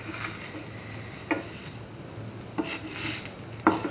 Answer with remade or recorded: recorded